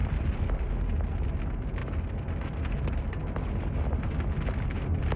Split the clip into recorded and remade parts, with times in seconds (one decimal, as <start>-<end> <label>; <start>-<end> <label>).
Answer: 0.0-0.7 remade; 0.7-5.2 recorded